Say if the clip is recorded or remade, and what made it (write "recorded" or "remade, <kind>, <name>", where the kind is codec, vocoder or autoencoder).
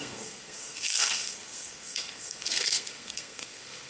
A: remade, codec, SNAC